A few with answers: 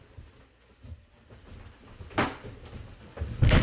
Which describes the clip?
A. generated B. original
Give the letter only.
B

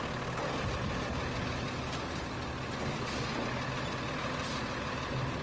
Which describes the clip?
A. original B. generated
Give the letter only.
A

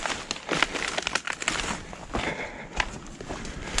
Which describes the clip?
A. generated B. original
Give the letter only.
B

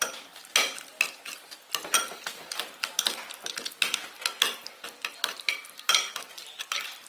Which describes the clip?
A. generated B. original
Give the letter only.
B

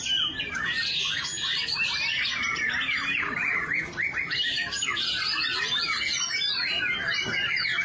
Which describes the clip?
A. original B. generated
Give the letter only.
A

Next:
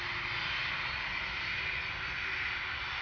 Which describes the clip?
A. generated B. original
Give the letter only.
B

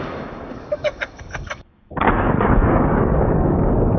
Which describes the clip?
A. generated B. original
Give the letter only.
A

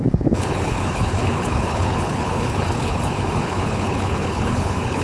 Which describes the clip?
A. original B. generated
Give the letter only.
B